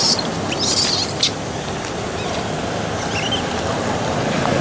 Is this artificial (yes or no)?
yes